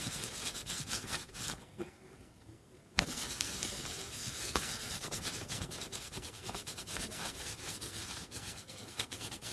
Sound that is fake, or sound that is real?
fake